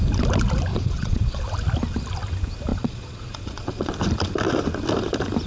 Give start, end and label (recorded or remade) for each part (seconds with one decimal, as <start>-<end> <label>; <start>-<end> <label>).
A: 0.0-0.7 recorded; 0.7-1.4 remade; 1.4-2.7 recorded; 2.7-3.9 remade; 3.9-5.5 recorded